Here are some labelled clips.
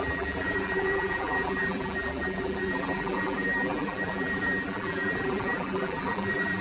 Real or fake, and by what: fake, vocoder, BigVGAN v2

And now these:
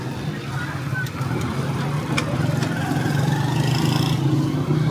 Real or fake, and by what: real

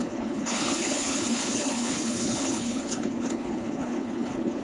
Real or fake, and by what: fake, codec, HILCodec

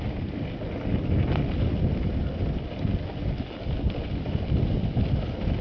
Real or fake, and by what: real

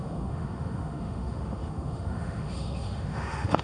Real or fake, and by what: fake, autoencoder, DAC-VAE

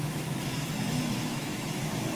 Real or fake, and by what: fake, autoencoder, DAC-VAE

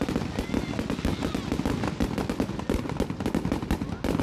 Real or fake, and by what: real